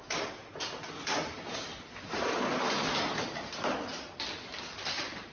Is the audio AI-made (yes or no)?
no